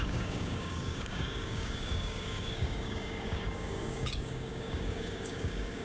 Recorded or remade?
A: remade